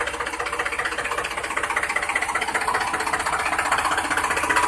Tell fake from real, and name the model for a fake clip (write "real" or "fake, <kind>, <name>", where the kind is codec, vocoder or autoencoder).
real